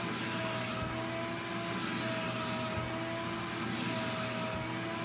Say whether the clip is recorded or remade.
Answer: recorded